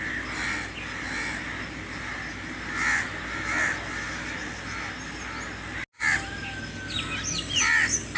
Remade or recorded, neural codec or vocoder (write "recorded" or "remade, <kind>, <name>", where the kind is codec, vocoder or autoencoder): recorded